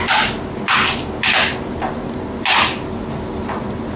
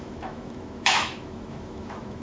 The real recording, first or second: first